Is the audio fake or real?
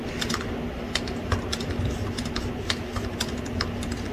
real